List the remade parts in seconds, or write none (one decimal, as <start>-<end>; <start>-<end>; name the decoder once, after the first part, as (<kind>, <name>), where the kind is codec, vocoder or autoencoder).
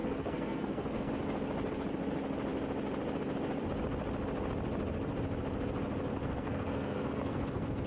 0.0-1.1 (codec, SNAC); 6.1-7.9